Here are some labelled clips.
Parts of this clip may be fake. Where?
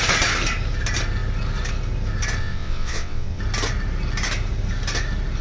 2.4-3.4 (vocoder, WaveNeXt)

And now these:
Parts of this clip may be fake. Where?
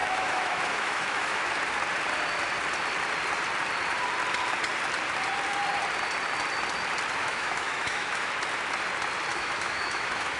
0.0-1.5 (autoencoder, DAC-VAE); 7.2-8.3; 9.3-10.4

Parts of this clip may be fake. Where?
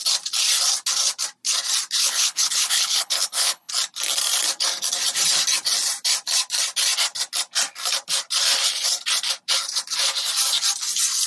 2.0-3.7 (codec, HILCodec)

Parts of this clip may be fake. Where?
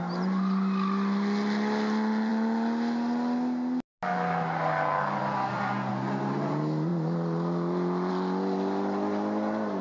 none